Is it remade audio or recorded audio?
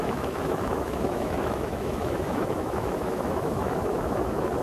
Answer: remade